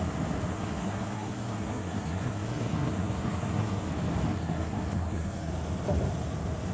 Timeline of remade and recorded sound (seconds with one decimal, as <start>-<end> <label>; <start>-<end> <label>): 0.0-0.5 recorded; 0.5-3.9 remade; 3.9-4.3 recorded; 4.3-5.5 remade; 5.5-6.7 recorded